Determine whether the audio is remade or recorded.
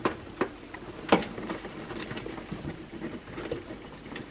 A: recorded